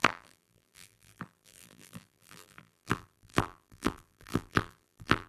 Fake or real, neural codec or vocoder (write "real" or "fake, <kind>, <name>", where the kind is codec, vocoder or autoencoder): fake, vocoder, BigVGAN v2